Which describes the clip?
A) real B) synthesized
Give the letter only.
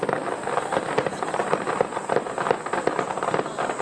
A